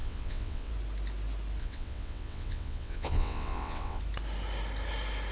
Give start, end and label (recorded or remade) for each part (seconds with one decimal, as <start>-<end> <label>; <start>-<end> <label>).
0.0-0.7 remade; 0.7-1.6 recorded; 1.6-4.0 remade; 4.0-5.3 recorded